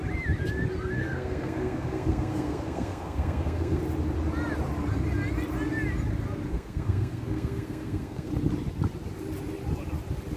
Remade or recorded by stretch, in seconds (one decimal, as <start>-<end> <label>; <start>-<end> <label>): 0.0-1.0 recorded; 1.0-3.8 remade; 3.8-6.5 recorded; 6.5-8.3 remade; 8.3-10.4 recorded